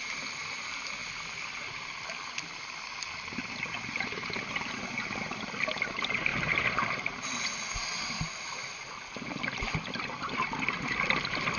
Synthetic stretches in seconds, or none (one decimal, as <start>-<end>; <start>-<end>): none